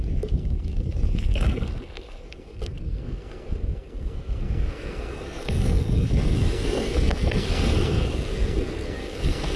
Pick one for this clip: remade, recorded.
remade